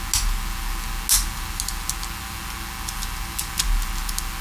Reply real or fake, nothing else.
real